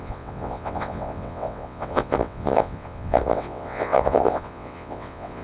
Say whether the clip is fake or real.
fake